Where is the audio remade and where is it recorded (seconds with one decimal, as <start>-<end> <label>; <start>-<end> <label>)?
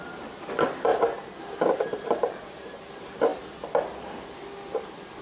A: 0.0-0.9 recorded; 0.9-2.9 remade; 2.9-5.2 recorded